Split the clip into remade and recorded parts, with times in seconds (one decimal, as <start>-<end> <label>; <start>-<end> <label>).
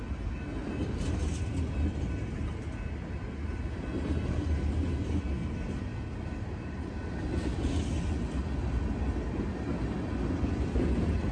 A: 0.0-11.3 recorded